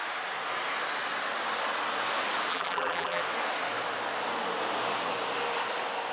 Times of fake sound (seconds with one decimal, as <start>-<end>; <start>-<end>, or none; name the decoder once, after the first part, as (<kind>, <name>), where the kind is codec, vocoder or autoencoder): 2.5-3.2 (vocoder, BigVGAN v2)